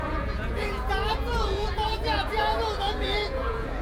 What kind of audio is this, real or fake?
fake